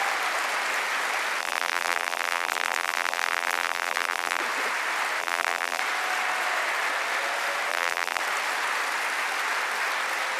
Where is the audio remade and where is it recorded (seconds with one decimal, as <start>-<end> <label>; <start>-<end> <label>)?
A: 0.0-1.4 recorded; 1.4-4.4 remade; 4.4-5.2 recorded; 5.2-5.8 remade; 5.8-7.7 recorded; 7.7-8.2 remade; 8.2-10.4 recorded